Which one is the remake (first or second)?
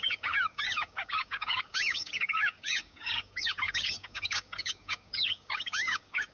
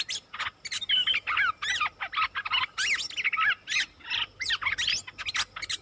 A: first